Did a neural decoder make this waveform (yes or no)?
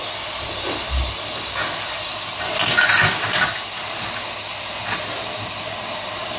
no